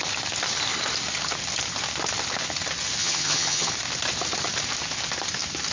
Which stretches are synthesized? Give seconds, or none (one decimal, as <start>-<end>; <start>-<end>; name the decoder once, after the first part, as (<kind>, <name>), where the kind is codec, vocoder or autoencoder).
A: 3.0-3.7 (vocoder, HiFi-GAN)